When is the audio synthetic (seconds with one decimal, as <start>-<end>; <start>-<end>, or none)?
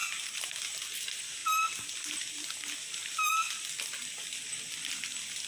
none